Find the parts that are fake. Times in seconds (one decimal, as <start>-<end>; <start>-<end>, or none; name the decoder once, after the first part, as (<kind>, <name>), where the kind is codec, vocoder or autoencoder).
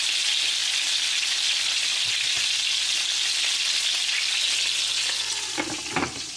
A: none